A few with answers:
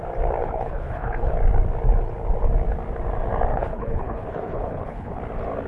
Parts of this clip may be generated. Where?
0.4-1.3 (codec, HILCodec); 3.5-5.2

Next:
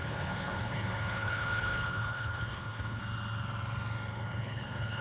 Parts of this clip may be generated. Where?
0.0-3.0 (codec, HILCodec); 4.1-5.0